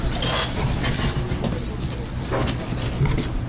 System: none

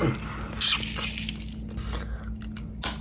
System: none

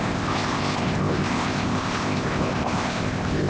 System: codec, ZipCodec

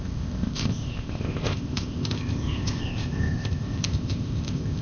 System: codec, ZipCodec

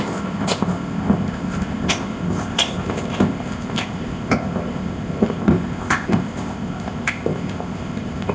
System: codec, ZipCodec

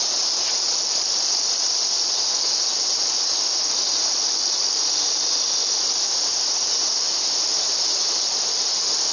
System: none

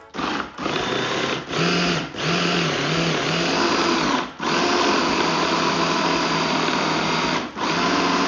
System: none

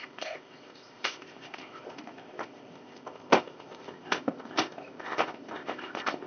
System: codec, ZipCodec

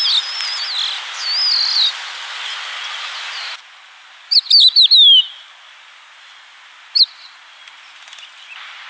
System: none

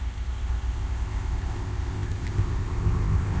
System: codec, ZipCodec